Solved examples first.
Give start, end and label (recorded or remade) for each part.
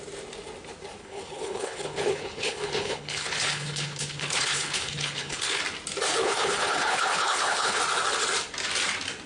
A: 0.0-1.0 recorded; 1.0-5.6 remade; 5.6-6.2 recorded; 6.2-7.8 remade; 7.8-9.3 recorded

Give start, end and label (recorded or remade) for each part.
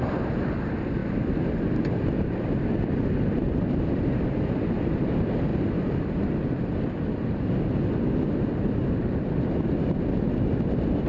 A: 0.0-11.1 recorded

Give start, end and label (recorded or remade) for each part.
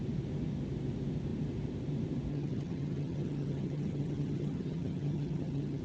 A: 0.0-2.3 recorded; 2.3-5.8 remade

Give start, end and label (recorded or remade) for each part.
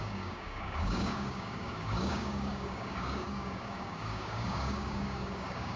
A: 0.0-5.8 remade